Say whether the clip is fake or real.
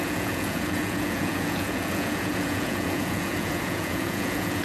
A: fake